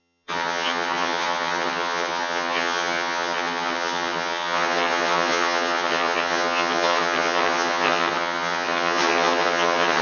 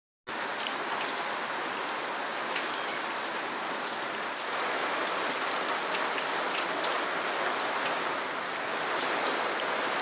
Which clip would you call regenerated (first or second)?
first